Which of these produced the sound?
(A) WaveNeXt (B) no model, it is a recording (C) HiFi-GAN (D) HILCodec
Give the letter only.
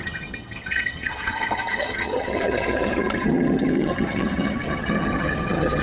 C